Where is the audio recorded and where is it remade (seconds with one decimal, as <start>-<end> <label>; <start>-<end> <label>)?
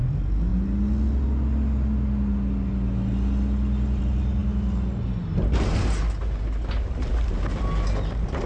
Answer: 0.0-8.5 recorded